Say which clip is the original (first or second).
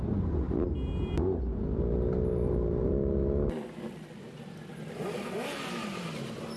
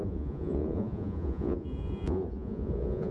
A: first